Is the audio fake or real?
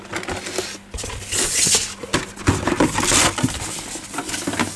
real